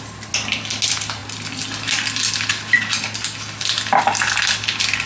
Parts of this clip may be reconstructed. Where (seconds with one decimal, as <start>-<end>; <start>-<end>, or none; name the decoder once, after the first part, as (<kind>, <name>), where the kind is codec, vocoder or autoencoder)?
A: none